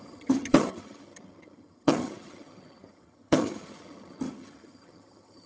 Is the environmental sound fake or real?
fake